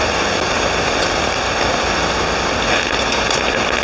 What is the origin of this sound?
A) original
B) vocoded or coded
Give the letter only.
A